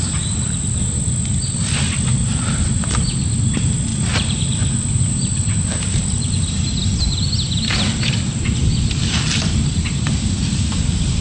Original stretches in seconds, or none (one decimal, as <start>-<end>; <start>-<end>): 0.0-11.2